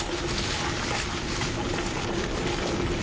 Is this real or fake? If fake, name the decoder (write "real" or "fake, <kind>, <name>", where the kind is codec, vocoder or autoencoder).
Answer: real